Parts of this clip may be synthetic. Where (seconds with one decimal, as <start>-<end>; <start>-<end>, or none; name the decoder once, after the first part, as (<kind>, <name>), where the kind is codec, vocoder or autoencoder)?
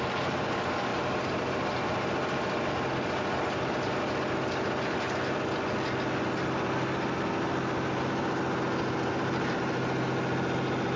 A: 0.9-2.7 (vocoder, BigVGAN v2)